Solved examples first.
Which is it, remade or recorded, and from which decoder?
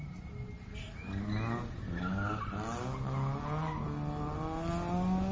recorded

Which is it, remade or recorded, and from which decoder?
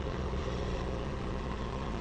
remade, vocoder, Vocos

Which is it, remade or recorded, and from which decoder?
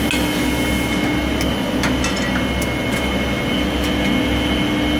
recorded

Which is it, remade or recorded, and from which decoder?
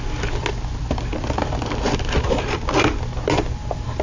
recorded